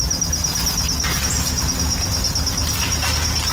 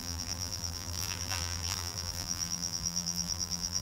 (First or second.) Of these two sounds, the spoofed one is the second